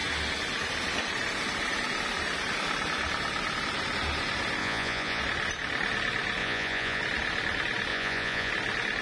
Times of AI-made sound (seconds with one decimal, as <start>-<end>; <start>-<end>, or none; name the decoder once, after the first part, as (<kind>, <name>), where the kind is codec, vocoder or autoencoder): 4.6-5.2 (vocoder, Vocos); 6.4-7.0; 7.9-8.5